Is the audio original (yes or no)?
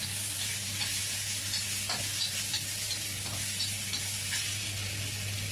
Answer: yes